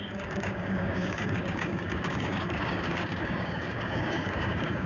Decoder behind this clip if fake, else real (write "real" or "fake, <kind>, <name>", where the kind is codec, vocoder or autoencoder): fake, codec, DAC